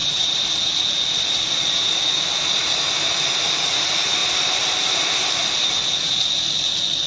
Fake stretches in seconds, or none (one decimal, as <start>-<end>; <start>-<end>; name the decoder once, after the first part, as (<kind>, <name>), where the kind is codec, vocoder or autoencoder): 0.0-0.7 (vocoder, BigVGAN v2); 4.2-5.3